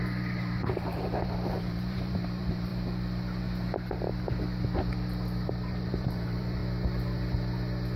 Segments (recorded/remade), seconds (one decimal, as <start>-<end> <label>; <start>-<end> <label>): 0.0-2.7 remade; 2.7-5.5 recorded; 5.5-6.6 remade; 6.6-8.0 recorded